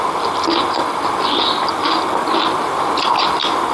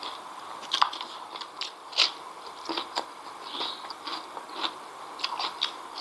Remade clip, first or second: second